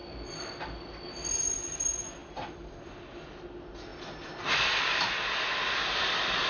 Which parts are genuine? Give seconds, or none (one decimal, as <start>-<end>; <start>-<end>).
0.0-6.5